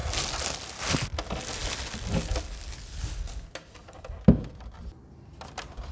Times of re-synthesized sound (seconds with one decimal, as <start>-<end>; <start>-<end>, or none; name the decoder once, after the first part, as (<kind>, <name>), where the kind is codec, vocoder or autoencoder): none